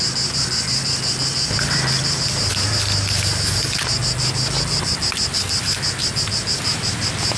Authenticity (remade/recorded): recorded